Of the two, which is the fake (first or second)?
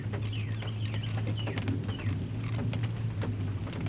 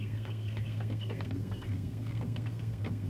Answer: second